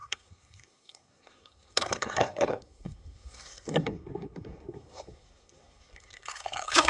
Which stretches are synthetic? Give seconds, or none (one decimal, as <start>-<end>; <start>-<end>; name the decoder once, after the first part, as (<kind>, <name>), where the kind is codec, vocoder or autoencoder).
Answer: 0.0-6.9 (codec, SNAC)